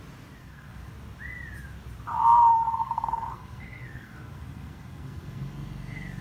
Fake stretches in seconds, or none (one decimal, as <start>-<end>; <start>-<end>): 0.4-0.9; 2.5-6.2